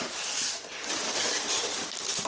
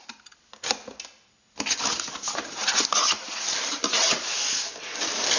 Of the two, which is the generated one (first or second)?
first